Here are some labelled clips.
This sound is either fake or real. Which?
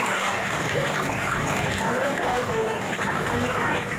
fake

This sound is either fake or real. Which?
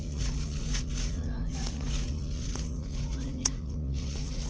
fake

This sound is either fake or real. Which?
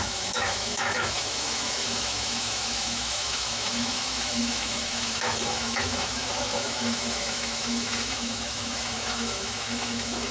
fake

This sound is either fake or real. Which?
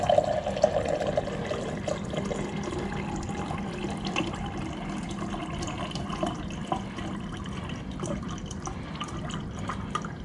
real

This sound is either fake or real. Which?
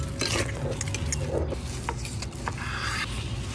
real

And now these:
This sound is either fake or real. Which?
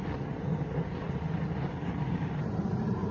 real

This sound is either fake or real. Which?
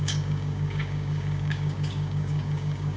fake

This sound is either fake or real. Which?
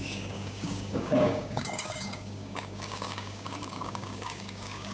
fake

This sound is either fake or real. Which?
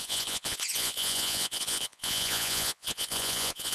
fake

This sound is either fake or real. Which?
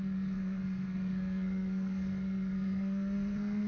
fake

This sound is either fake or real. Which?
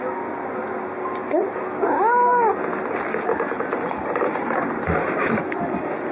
real